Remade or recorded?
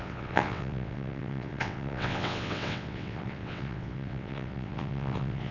remade